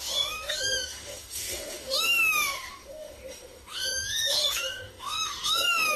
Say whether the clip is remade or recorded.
remade